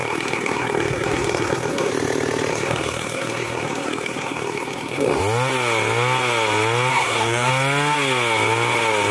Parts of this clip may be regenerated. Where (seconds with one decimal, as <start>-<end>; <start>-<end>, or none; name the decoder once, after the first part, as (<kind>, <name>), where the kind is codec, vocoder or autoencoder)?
0.0-1.9 (codec, SNAC); 2.5-5.2; 6.9-7.5